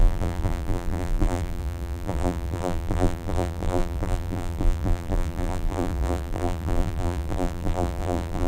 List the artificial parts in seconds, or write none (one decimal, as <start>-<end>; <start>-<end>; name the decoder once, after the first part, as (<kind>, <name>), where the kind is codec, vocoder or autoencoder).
0.0-8.5 (vocoder, BigVGAN v2)